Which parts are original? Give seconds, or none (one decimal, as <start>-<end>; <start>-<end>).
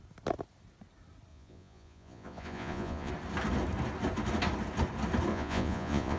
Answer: 0.0-1.3; 3.1-5.3